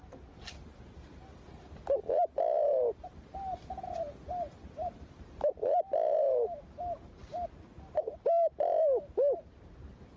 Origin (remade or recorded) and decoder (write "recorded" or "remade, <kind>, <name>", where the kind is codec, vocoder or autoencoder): recorded